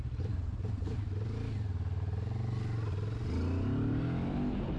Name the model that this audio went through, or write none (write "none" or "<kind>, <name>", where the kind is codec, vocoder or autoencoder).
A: none